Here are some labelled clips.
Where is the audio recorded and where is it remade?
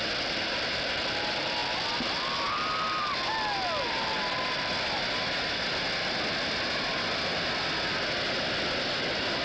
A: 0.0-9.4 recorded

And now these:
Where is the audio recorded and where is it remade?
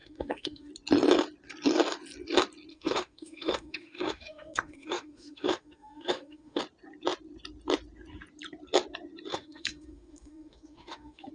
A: 0.0-0.7 remade; 0.7-2.7 recorded; 2.7-6.6 remade; 6.6-9.3 recorded; 9.3-11.3 remade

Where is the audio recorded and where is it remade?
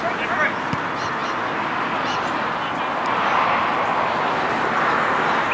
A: 0.0-5.5 recorded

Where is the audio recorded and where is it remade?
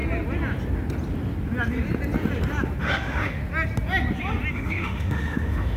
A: 0.0-2.8 recorded; 2.8-3.4 remade; 3.4-4.5 recorded; 4.5-5.8 remade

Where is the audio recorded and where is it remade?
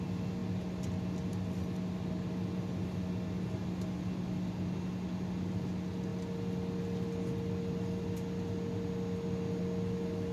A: 0.0-10.3 recorded